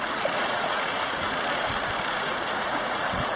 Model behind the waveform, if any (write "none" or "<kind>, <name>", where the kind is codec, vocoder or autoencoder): vocoder, Vocos